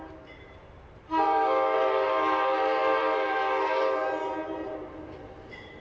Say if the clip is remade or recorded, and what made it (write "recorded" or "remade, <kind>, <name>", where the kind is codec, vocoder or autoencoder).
remade, vocoder, BigVGAN v2